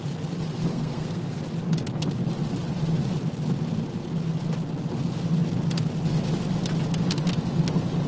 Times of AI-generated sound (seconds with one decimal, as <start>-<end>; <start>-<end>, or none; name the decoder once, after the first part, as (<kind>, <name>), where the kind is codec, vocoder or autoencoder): 0.7-1.4 (codec, SNAC)